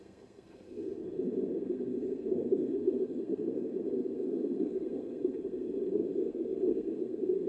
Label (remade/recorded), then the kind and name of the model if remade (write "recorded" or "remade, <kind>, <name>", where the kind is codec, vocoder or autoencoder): remade, codec, SNAC